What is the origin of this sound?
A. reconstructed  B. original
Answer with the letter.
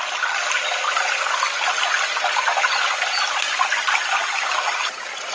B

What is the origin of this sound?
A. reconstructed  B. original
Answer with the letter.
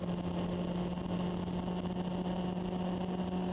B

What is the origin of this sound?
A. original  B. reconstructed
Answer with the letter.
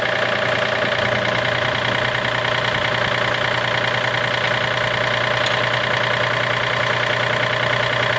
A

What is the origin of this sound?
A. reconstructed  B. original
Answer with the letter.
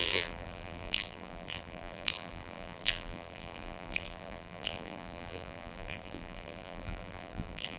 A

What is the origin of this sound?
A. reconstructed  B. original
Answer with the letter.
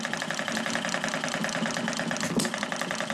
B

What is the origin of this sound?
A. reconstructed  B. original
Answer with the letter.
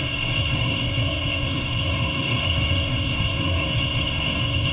A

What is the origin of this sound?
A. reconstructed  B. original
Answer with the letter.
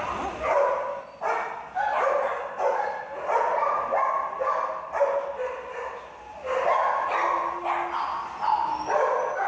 B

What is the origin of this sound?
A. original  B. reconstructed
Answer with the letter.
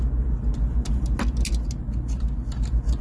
A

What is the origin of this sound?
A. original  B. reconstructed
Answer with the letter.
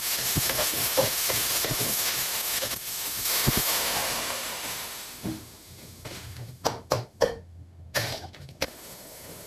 B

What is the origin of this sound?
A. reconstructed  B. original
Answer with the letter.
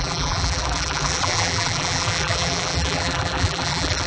A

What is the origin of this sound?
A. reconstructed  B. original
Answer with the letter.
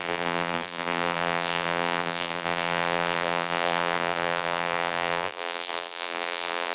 A